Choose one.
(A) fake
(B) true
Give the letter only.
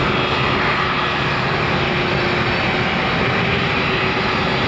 B